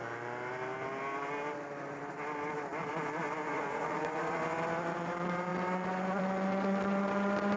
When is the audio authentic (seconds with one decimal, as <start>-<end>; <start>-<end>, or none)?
0.0-3.5; 4.4-7.6